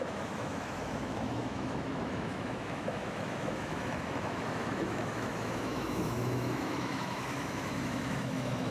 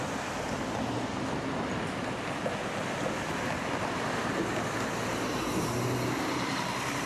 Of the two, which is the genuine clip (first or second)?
second